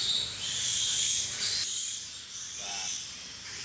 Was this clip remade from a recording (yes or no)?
yes